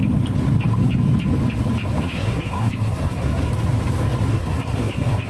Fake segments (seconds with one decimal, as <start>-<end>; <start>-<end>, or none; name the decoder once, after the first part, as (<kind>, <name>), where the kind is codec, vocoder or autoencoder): 2.0-3.5 (codec, SNAC); 4.3-5.3